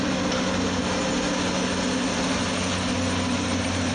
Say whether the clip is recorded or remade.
recorded